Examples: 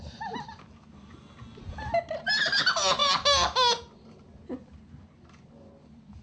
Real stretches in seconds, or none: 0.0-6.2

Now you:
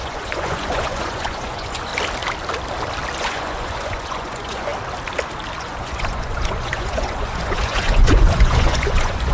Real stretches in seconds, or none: 1.9-3.2; 4.7-5.6

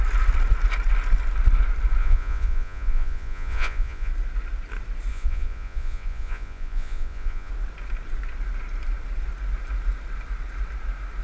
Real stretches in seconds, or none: 0.0-2.0; 4.1-5.1; 7.5-11.2

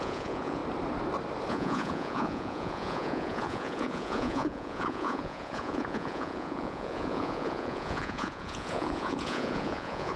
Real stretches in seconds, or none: 0.6-1.5

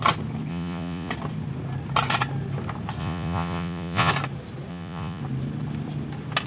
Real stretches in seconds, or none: 0.0-0.5; 1.1-3.0; 4.1-4.7; 5.2-6.5

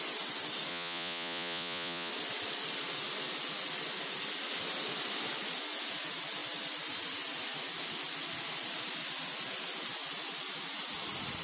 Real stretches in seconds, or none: 0.0-0.7; 2.1-11.4

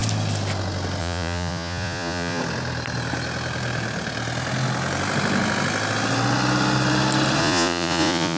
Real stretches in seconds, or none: 0.0-1.0; 2.4-7.4